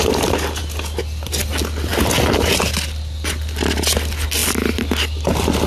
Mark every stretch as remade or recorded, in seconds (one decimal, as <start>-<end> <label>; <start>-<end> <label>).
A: 0.0-5.7 recorded